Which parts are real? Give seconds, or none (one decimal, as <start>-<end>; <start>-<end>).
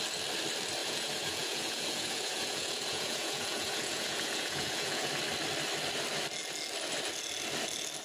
0.0-0.8; 5.1-8.0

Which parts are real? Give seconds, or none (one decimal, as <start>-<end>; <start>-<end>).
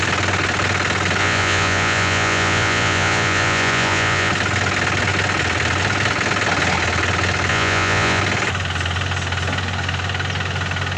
0.0-1.2; 4.3-7.5; 8.2-11.0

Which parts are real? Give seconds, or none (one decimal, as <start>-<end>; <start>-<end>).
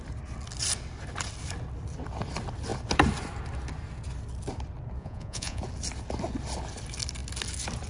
0.0-5.0; 5.6-7.9